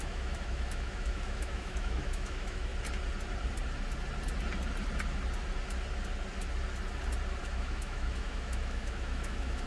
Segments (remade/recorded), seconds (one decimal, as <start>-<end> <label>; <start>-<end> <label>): 0.0-2.7 remade; 2.7-7.4 recorded; 7.4-9.7 remade